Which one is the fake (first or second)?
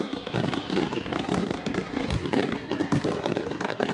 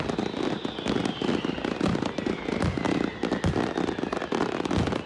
first